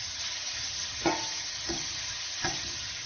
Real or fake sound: fake